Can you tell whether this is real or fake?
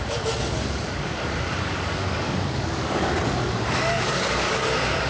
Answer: fake